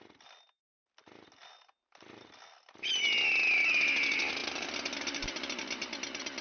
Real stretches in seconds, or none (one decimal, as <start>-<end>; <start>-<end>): 0.0-6.4